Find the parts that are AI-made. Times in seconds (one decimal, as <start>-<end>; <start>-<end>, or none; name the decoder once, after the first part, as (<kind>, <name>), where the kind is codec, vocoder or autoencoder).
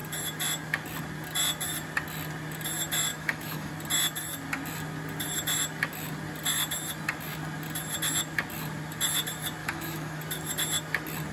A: 3.1-3.7 (autoencoder, DAC-VAE); 9.6-10.2